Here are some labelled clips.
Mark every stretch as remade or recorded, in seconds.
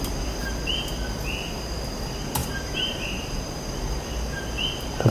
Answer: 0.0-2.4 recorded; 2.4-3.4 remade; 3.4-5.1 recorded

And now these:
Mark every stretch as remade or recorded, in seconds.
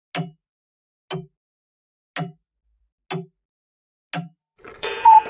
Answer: 0.0-4.4 recorded; 4.4-5.3 remade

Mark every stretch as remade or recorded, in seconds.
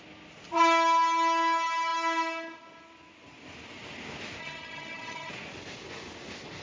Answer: 0.0-4.4 recorded; 4.4-5.3 remade; 5.3-6.6 recorded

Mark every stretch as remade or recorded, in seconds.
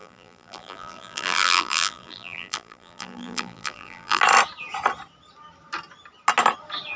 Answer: 0.0-4.2 remade; 4.2-7.0 recorded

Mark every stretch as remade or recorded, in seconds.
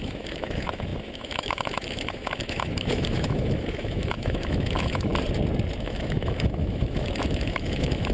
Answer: 0.0-5.1 remade; 5.1-5.8 recorded; 5.8-8.1 remade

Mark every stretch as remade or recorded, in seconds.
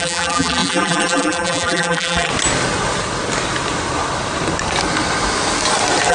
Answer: 0.0-2.3 remade; 2.3-6.1 recorded